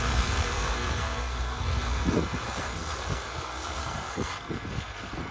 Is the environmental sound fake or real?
fake